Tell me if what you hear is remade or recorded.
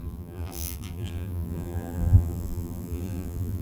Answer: remade